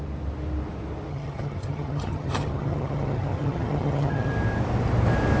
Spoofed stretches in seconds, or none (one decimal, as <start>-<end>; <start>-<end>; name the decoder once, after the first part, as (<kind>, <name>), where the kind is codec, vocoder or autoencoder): 1.1-4.3 (vocoder, HiFi-GAN)